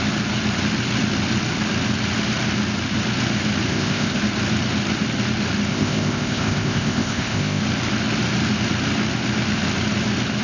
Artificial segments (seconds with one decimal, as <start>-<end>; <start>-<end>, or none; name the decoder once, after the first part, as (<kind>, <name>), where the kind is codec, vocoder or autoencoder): 3.7-4.2 (codec, ZipCodec); 5.7-7.6